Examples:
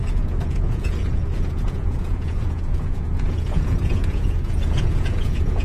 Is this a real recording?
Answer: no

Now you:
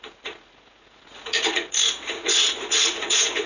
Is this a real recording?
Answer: no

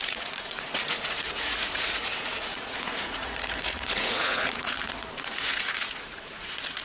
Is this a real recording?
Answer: no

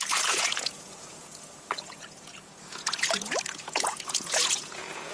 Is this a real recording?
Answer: no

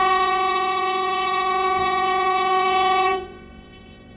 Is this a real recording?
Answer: no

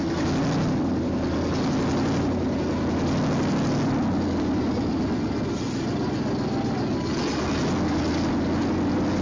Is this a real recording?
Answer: yes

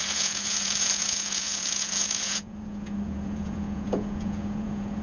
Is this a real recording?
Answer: no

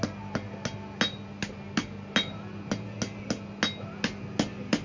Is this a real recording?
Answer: yes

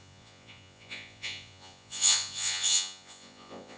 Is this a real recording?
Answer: no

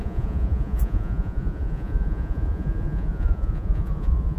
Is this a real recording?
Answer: no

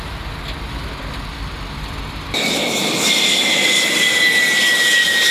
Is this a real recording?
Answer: yes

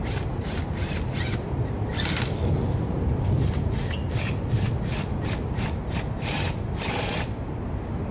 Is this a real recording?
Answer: yes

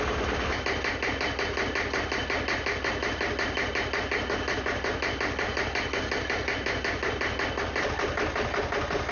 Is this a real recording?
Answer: yes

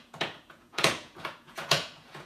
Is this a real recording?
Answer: no